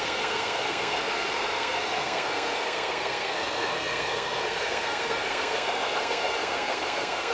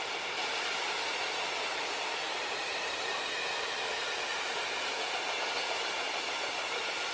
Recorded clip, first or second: second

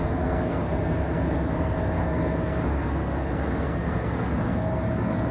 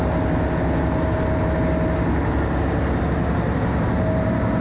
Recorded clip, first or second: second